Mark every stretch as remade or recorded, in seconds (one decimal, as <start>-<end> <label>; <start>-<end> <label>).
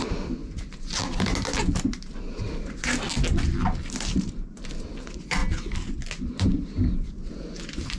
0.0-0.4 remade; 0.4-1.7 recorded; 1.7-5.4 remade; 5.4-6.3 recorded; 6.3-8.0 remade